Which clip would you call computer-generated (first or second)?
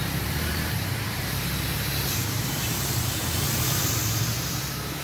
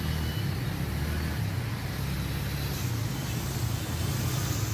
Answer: first